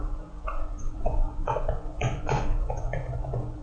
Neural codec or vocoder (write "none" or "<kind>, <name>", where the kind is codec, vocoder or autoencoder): vocoder, Vocos